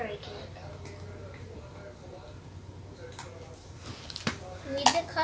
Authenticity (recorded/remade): recorded